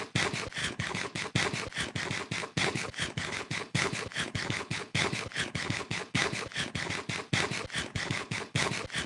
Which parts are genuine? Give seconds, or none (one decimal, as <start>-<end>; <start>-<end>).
0.0-0.6; 1.3-2.4; 6.9-7.9; 8.7-9.1